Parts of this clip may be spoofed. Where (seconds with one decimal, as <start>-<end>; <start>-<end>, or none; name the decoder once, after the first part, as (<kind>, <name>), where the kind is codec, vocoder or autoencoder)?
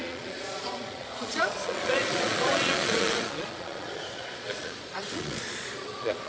0.0-6.3 (vocoder, Vocos)